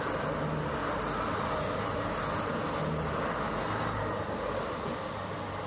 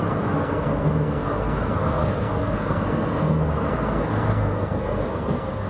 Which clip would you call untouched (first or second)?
first